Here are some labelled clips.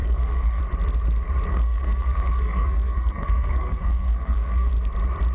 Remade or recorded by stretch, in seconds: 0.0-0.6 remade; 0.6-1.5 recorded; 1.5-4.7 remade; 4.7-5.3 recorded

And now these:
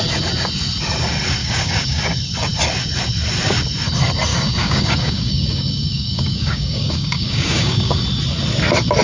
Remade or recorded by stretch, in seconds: 0.0-1.4 recorded; 1.4-2.0 remade; 2.0-4.3 recorded; 4.3-7.9 remade; 7.9-9.0 recorded

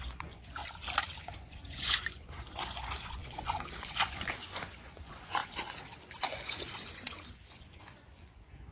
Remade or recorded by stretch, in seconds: 0.0-0.6 remade; 0.6-1.2 recorded; 1.2-8.7 remade

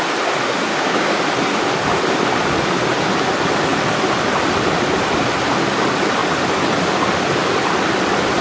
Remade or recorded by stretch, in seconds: 0.0-0.7 recorded; 0.7-1.2 remade; 1.2-8.4 recorded

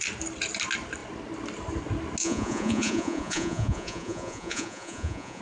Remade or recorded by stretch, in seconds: 0.0-2.2 recorded; 2.2-5.4 remade

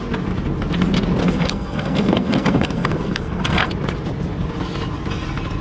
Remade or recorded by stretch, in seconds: 0.0-1.2 recorded; 1.2-3.7 remade; 3.7-5.6 recorded

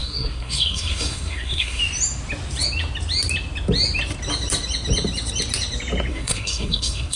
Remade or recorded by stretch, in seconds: 0.0-1.8 remade; 1.8-6.1 recorded; 6.1-7.2 remade

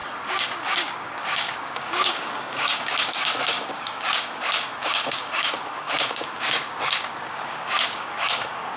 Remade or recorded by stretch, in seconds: 0.0-8.8 remade